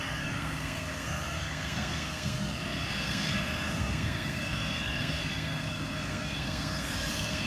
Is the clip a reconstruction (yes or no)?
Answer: yes